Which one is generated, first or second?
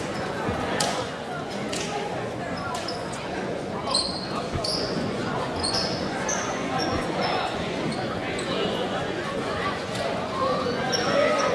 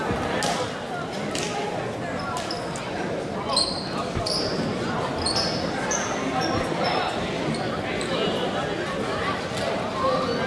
first